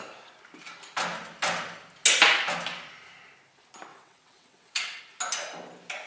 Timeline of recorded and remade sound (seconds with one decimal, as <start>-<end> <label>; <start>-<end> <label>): 0.0-3.9 recorded; 3.9-5.0 remade; 5.0-6.1 recorded